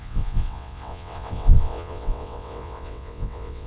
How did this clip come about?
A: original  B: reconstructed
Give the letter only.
B